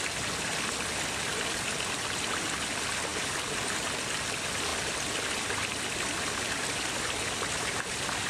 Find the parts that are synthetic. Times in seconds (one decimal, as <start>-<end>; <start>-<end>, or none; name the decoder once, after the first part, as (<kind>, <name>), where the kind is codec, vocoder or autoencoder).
none